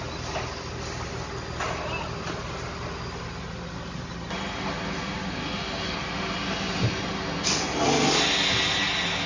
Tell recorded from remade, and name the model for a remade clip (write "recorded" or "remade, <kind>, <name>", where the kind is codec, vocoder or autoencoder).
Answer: recorded